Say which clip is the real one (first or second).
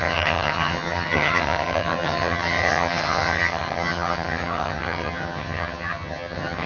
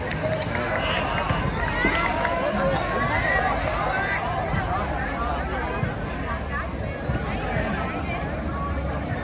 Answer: second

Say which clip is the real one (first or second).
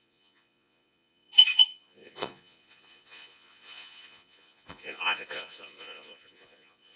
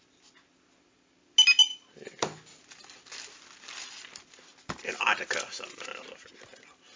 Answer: second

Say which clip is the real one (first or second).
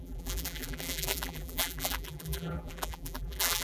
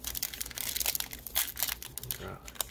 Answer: second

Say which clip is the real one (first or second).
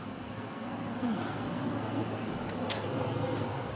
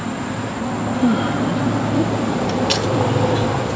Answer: second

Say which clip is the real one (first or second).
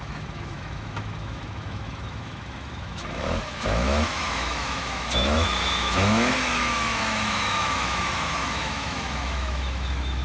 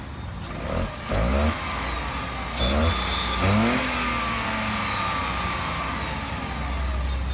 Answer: second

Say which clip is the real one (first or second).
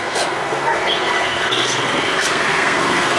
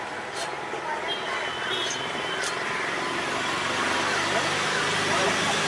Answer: second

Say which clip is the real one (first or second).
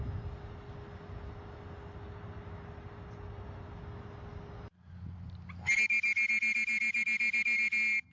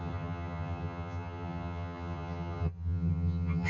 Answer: first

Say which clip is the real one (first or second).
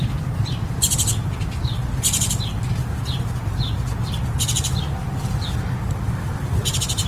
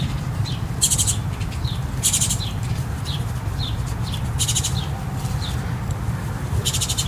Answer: first